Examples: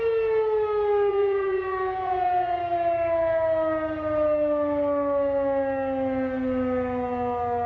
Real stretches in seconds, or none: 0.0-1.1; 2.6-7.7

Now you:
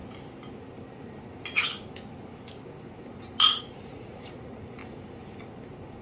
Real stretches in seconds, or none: 0.0-3.6; 4.8-6.0

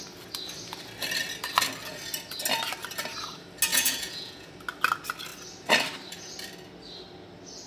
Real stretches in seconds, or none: 0.0-3.7; 4.5-7.7